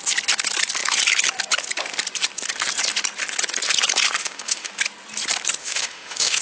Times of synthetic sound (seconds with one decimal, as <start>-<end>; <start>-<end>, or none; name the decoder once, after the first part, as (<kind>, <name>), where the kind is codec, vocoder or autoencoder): 4.2-4.7 (autoencoder, DAC-VAE); 5.6-6.4